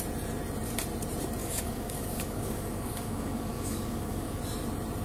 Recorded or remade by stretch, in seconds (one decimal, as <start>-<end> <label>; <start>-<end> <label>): 0.0-1.4 recorded; 1.4-4.4 remade; 4.4-5.0 recorded